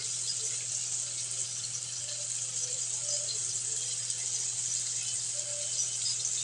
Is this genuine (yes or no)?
yes